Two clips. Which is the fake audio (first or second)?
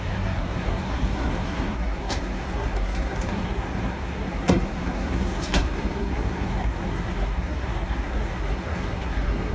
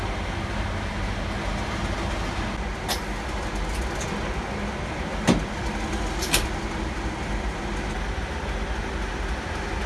first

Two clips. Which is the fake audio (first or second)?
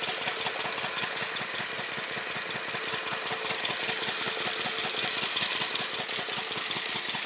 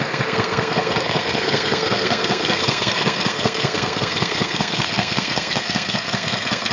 second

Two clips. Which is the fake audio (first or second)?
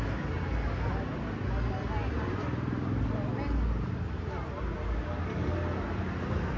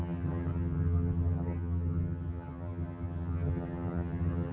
second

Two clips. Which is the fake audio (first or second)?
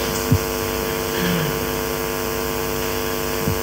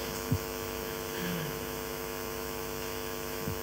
second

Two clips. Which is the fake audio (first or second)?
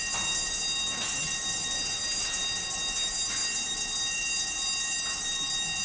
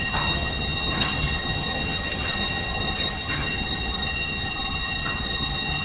second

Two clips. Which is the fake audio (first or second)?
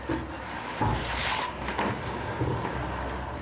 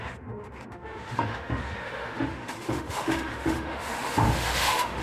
second